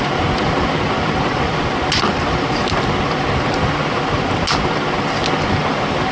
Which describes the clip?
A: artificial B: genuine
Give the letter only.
B